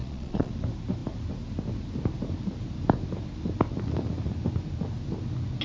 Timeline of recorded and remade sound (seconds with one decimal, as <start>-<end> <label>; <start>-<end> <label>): 0.0-0.5 remade; 0.5-5.6 recorded